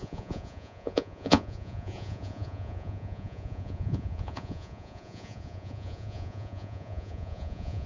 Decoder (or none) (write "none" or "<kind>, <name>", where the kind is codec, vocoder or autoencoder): vocoder, Vocos